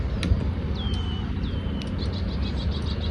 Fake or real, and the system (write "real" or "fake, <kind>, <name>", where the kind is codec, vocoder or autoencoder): real